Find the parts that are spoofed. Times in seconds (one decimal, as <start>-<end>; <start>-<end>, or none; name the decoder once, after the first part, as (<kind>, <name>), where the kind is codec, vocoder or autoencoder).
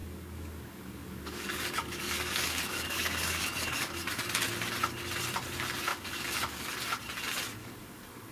0.0-3.9 (codec, DAC); 5.9-6.7; 7.6-8.3